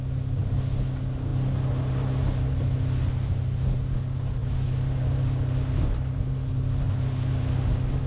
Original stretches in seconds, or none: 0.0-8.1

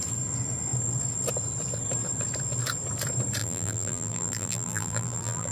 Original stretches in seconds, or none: 0.0-3.4

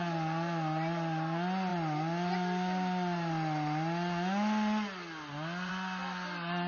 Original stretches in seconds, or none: 0.0-6.7

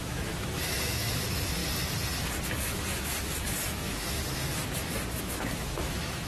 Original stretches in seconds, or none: 1.6-2.6; 4.6-5.2

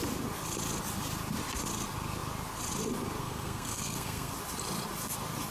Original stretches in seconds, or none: 0.0-3.2; 4.3-5.5

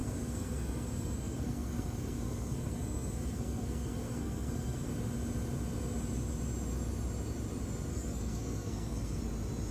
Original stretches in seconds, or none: 4.9-7.9; 9.2-9.7

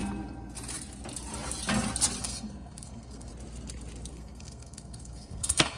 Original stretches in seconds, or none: 0.0-2.2; 3.3-4.1